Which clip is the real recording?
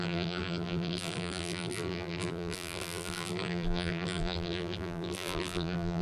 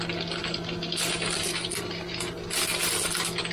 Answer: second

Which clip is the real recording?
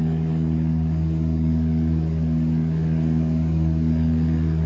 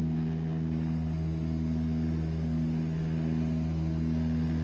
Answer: second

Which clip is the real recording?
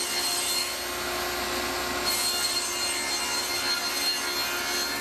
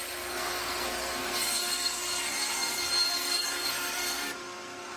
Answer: first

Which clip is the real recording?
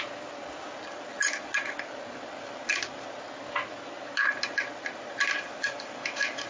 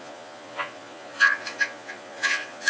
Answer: first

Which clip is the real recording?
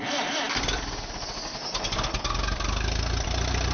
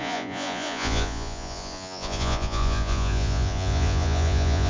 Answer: first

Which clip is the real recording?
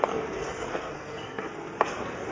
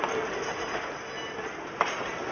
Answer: second